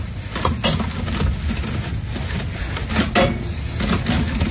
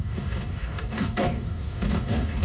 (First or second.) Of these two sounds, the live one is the first